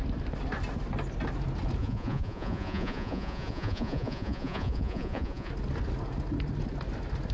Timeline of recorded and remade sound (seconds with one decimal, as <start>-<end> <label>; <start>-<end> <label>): 0.0-1.8 recorded; 1.8-5.5 remade; 5.5-7.3 recorded